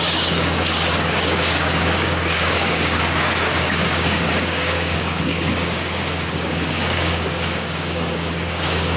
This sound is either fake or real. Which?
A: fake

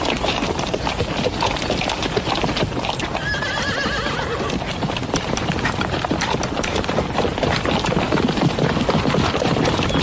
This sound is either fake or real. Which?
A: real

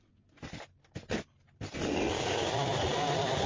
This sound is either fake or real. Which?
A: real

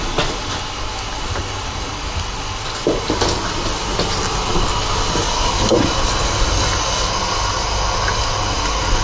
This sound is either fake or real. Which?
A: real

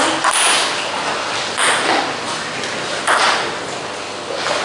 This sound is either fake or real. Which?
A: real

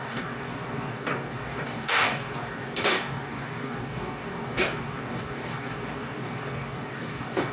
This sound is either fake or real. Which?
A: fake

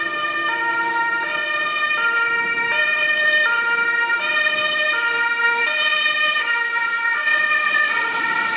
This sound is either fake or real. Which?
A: real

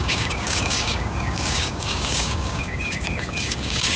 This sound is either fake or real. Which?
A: fake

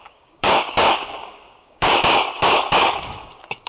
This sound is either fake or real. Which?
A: fake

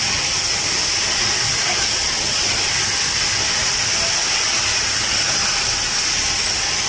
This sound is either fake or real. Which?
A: real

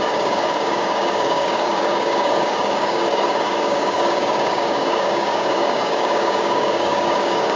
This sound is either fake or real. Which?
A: fake